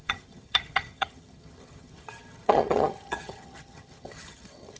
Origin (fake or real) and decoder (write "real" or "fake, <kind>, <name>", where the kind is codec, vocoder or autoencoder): fake, vocoder, HiFi-GAN